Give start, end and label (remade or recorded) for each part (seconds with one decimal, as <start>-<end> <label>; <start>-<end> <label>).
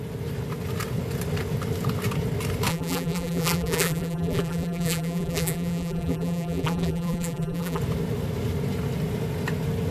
0.0-2.7 recorded; 2.7-7.8 remade; 7.8-9.9 recorded